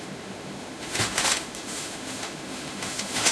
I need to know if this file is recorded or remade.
remade